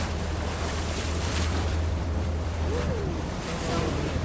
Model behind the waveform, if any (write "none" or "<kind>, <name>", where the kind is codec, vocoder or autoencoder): vocoder, BigVGAN v2